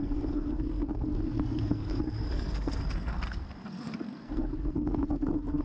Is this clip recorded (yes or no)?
no